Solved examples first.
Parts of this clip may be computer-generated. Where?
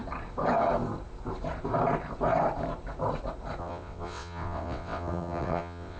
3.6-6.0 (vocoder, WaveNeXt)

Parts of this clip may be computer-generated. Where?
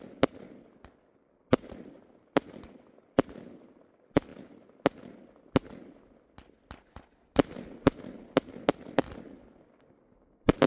none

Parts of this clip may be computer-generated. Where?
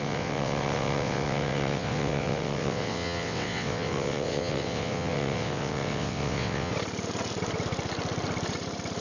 0.0-6.7 (vocoder, WaveNeXt)